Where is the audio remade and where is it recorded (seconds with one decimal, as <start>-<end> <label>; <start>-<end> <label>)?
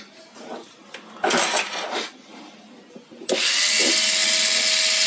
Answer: 0.0-5.1 recorded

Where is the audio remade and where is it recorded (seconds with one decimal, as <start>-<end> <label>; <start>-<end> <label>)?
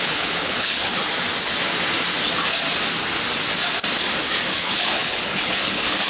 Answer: 0.0-0.8 remade; 0.8-4.5 recorded; 4.5-6.1 remade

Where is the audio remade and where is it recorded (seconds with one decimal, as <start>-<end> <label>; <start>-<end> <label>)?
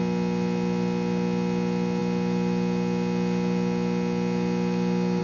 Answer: 0.0-5.2 recorded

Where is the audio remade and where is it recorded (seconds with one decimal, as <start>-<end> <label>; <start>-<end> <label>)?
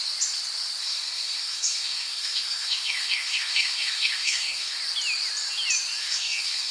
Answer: 0.0-0.8 recorded; 0.8-4.8 remade; 4.8-6.0 recorded; 6.0-6.7 remade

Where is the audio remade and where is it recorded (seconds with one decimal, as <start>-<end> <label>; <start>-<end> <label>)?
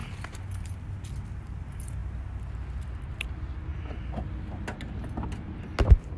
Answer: 0.0-6.2 recorded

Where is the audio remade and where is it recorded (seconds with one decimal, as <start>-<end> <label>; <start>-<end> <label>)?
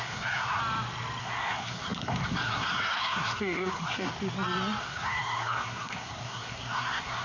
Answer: 0.0-0.6 remade; 0.6-1.2 recorded; 1.2-4.1 remade; 4.1-4.8 recorded; 4.8-7.2 remade